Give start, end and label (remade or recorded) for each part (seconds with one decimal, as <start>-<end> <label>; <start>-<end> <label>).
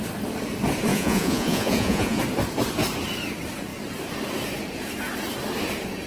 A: 0.0-0.9 recorded; 0.9-2.2 remade; 2.2-6.1 recorded